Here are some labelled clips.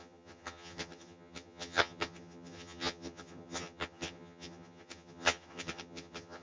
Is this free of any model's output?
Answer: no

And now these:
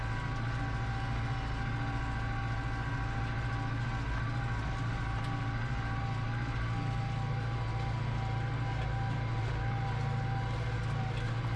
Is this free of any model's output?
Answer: yes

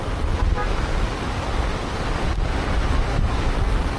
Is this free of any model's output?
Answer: yes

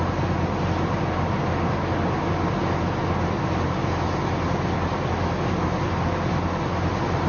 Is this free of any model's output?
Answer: yes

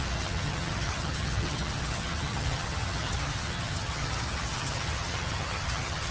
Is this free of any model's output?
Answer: no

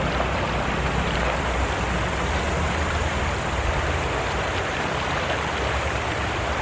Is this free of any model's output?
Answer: yes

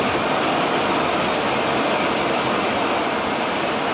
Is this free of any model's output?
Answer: yes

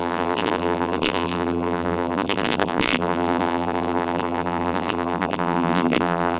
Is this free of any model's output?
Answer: no